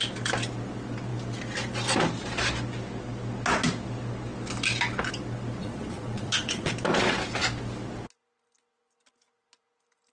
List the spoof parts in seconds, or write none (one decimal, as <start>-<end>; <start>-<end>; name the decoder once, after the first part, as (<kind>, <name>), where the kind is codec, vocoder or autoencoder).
5.6-6.7 (vocoder, Vocos)